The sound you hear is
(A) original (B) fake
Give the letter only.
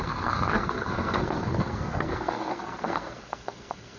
B